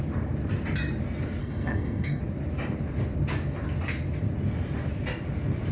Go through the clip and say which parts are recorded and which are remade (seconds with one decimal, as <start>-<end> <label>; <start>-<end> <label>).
0.0-1.4 recorded; 1.4-2.2 remade; 2.2-5.7 recorded